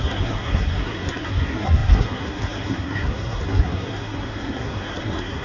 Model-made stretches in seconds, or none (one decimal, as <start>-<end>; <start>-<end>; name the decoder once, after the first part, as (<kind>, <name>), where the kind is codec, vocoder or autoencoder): 0.0-5.4 (codec, SNAC)